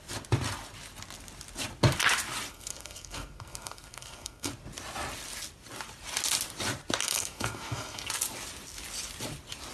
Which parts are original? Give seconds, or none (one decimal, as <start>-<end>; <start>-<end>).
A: 0.0-2.5; 4.5-7.0; 8.1-9.7